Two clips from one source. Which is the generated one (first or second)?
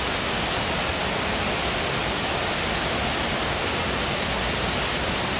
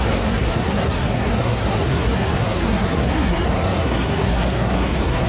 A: second